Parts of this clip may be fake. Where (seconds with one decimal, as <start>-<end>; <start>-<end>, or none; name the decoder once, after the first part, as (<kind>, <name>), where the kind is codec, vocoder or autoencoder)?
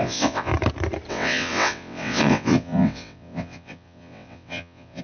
0.0-0.5 (vocoder, WaveNeXt); 1.1-5.0